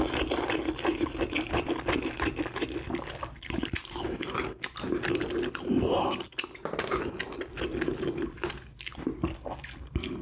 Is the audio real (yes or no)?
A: yes